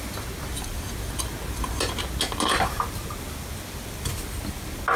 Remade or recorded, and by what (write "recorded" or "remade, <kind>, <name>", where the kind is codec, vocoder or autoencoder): recorded